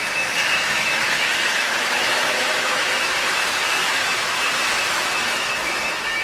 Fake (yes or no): yes